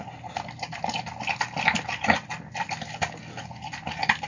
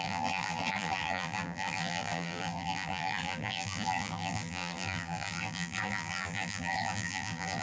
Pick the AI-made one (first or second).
second